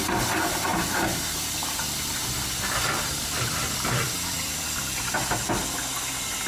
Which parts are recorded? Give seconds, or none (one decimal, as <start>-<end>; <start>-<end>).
0.0-0.7; 1.2-1.6; 5.5-6.5